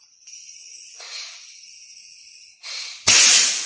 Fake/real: fake